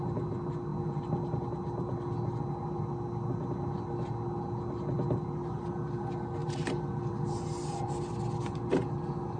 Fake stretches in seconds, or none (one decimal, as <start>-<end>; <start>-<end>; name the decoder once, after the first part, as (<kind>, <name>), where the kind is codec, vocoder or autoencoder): none